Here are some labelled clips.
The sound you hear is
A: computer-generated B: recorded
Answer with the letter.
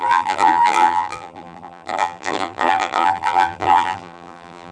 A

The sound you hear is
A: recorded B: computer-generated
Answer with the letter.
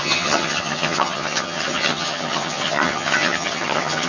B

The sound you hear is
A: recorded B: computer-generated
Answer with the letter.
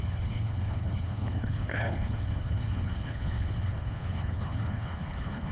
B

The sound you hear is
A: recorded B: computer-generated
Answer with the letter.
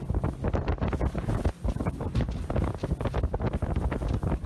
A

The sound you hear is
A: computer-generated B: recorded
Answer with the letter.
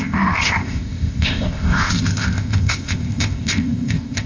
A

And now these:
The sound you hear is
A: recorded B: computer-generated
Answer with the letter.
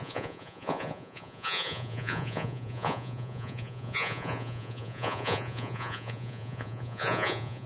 B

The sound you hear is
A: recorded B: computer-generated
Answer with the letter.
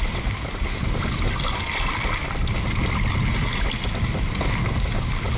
A